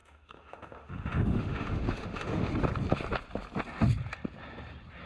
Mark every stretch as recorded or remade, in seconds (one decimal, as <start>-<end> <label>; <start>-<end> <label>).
0.0-2.5 remade; 2.5-5.1 recorded